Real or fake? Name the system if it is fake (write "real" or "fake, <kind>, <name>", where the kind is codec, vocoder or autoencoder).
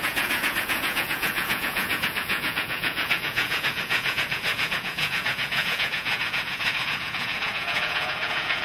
fake, vocoder, Vocos